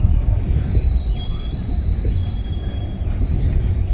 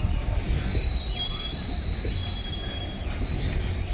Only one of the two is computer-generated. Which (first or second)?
first